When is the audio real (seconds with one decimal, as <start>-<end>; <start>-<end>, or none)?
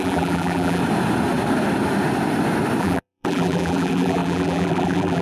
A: 0.8-2.8